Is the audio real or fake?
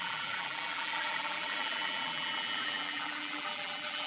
fake